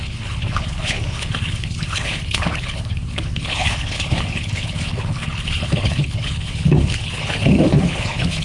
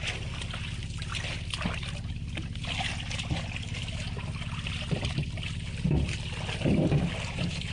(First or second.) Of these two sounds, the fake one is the first